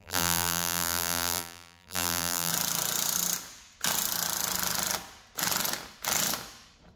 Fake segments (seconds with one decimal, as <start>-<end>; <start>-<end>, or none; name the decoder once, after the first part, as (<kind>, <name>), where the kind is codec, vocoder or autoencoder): 0.0-2.5 (vocoder, BigVGAN v2)